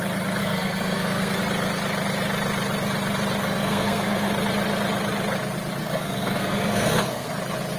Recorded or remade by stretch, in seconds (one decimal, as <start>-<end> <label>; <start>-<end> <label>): 0.0-0.4 recorded; 0.4-1.4 remade; 1.4-3.4 recorded; 3.4-4.3 remade; 4.3-5.8 recorded; 5.8-7.3 remade; 7.3-7.8 recorded